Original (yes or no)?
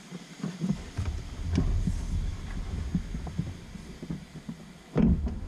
yes